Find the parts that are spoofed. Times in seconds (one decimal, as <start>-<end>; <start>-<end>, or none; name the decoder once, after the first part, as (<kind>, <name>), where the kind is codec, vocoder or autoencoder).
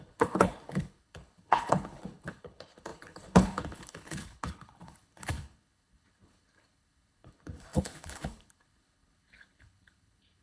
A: 0.0-10.4 (codec, HILCodec)